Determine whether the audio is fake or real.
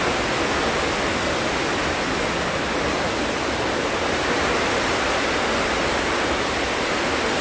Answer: real